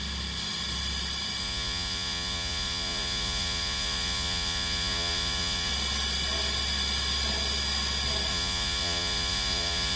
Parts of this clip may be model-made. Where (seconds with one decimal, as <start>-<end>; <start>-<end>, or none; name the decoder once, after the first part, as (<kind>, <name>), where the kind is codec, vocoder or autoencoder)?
1.4-5.7 (vocoder, Vocos); 8.3-10.0